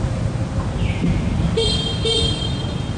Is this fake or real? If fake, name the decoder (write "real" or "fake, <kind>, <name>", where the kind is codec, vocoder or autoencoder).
real